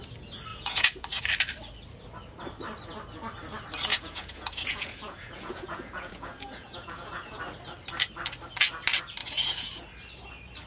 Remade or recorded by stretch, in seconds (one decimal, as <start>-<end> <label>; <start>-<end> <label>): 0.0-0.5 recorded; 0.5-1.2 remade; 1.2-3.9 recorded; 3.9-7.4 remade; 7.4-9.2 recorded; 9.2-9.8 remade; 9.8-10.7 recorded